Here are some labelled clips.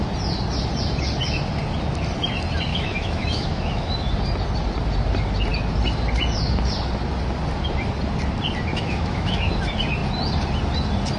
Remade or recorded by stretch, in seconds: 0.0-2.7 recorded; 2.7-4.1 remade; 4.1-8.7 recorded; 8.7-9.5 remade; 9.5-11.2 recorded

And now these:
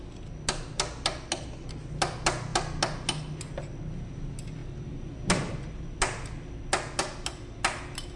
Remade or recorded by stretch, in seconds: 0.0-8.2 recorded

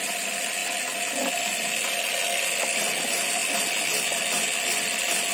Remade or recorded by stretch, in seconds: 0.0-5.3 recorded